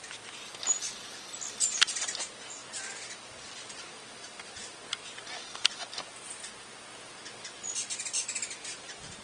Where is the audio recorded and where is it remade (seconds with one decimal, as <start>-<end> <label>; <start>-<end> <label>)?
0.0-9.2 recorded